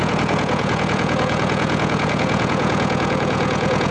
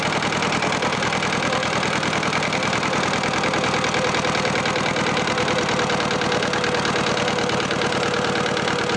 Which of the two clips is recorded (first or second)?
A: second